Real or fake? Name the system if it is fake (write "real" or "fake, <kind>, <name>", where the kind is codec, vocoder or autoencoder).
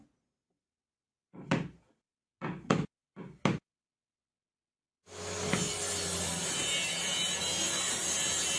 real